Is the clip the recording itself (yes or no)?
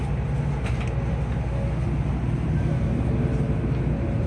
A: yes